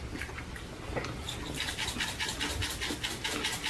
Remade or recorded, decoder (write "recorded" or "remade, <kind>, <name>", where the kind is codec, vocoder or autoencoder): recorded